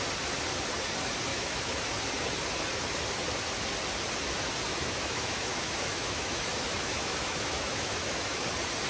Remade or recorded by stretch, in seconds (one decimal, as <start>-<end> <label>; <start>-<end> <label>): 0.0-1.3 recorded; 1.3-1.8 remade; 1.8-4.7 recorded; 4.7-8.4 remade; 8.4-8.9 recorded